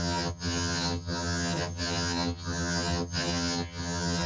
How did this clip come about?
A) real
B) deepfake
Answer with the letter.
B